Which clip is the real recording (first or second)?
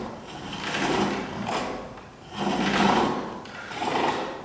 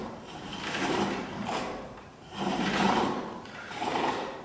first